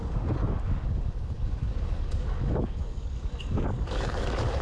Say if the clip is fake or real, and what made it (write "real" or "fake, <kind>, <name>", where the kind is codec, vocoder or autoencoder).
fake, codec, DAC